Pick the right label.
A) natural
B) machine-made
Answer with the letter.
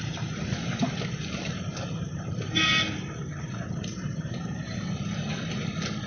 B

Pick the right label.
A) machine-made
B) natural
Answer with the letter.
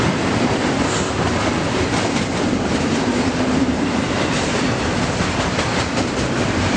A